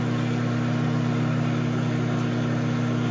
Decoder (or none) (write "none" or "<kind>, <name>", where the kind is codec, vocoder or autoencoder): none